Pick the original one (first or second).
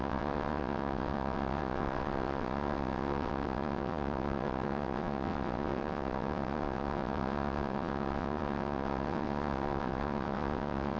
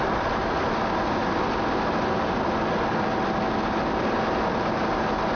second